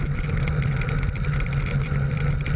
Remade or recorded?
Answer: recorded